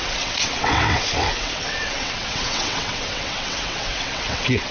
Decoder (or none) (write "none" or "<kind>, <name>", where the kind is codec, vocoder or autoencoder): vocoder, WaveNeXt